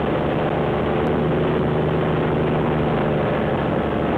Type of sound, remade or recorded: recorded